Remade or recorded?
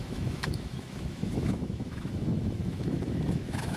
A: remade